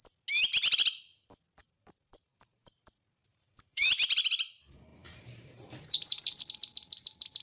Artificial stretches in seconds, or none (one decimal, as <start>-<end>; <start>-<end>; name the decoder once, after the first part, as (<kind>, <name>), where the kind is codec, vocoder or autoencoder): 1.6-3.9 (vocoder, BigVGAN v2); 4.9-6.4